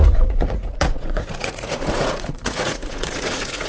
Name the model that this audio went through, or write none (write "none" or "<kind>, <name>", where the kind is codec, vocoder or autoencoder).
vocoder, Vocos